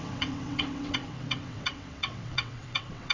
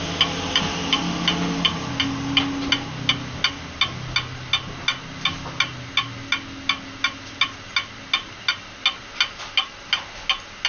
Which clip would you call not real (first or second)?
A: first